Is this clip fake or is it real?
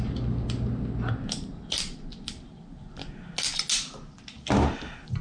real